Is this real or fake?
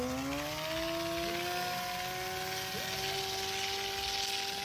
real